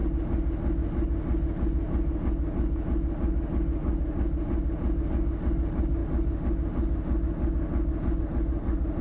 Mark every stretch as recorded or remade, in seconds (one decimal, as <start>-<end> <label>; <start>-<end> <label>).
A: 0.0-9.0 recorded